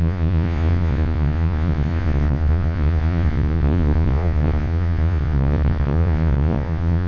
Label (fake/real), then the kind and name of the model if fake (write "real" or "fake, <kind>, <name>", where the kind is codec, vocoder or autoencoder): fake, vocoder, Vocos